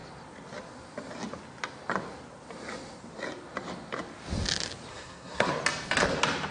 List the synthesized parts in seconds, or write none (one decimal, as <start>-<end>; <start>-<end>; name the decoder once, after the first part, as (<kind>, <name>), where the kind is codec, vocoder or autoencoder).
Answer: 4.9-5.5 (codec, SNAC)